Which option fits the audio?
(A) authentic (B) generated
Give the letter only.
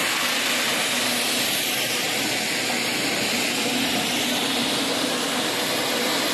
A